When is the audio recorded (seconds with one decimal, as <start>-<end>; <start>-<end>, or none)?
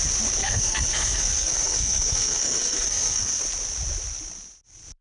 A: 0.0-0.4; 3.4-5.0